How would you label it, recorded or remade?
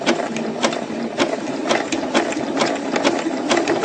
recorded